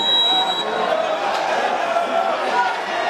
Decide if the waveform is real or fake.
real